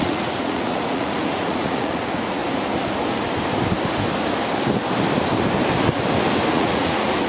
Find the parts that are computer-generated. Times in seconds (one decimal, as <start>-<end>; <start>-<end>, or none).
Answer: 0.0-2.4; 6.5-7.3